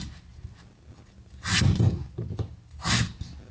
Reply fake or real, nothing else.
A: real